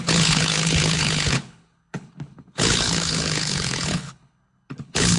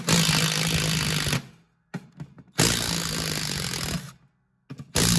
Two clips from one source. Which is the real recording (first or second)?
second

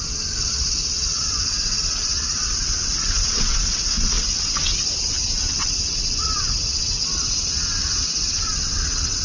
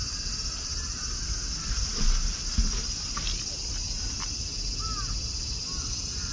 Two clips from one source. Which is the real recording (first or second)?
second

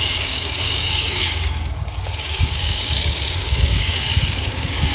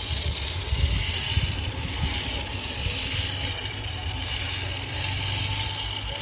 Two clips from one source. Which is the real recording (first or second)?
second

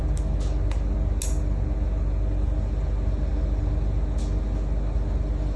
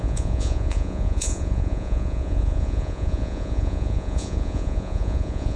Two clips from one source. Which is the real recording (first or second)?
first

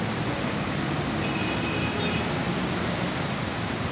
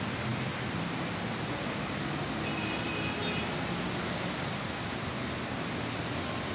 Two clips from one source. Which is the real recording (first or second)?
second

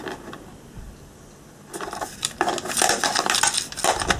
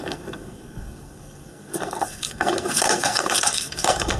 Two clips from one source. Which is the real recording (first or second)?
first